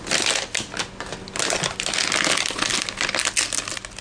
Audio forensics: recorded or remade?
recorded